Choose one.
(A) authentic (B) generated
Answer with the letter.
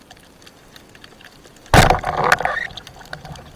A